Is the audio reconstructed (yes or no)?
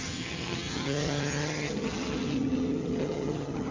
yes